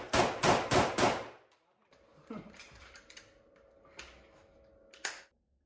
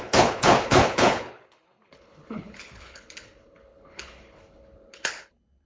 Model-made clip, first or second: second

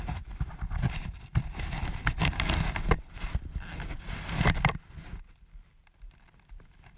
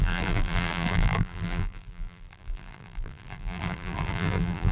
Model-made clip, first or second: second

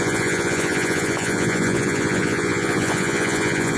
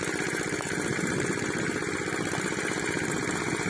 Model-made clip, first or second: first